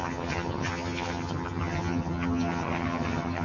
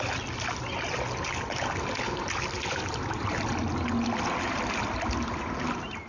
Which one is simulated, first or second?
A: first